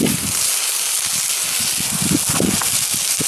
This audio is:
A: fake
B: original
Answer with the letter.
B